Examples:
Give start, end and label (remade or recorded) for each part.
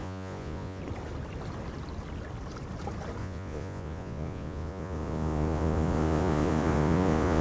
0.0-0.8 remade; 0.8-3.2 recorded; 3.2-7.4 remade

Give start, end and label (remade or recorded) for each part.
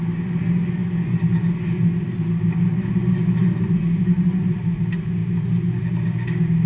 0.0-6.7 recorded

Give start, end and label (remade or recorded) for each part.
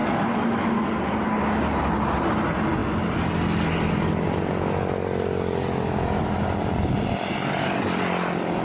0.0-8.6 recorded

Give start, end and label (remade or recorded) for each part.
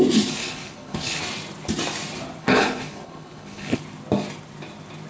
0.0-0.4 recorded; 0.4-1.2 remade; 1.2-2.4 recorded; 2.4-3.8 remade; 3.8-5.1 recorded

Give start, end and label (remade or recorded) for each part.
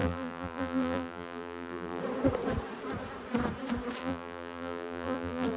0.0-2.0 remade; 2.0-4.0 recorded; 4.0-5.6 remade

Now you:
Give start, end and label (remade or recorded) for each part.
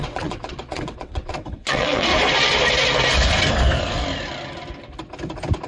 0.0-2.1 remade; 2.1-5.7 recorded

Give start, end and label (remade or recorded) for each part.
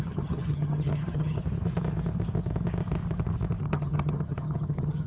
0.0-1.4 remade; 1.4-3.6 recorded; 3.6-5.1 remade